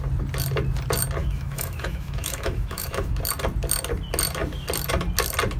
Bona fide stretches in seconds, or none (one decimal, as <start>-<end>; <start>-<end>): 0.0-1.2; 3.1-5.6